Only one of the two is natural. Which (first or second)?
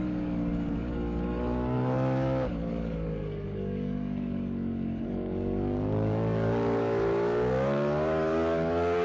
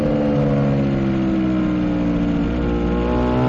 second